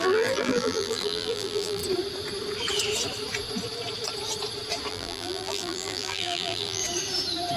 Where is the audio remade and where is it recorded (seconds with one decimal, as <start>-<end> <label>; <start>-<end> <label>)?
0.0-1.8 remade; 1.8-4.9 recorded; 4.9-6.8 remade; 6.8-7.6 recorded